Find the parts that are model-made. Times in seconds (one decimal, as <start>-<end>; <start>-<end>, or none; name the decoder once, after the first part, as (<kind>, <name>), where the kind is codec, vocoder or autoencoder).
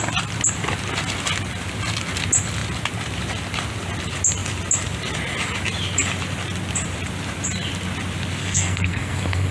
8.4-9.5 (codec, SNAC)